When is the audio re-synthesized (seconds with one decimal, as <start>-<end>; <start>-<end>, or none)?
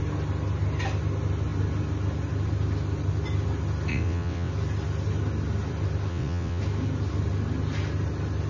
3.9-4.5; 6.1-6.6